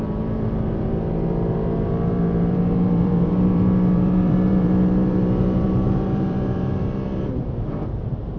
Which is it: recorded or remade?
remade